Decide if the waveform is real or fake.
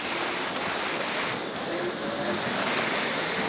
real